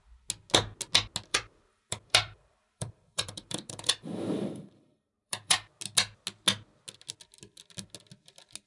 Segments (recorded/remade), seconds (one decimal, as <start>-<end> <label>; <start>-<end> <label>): 0.0-1.3 recorded; 1.3-5.8 remade; 5.8-8.7 recorded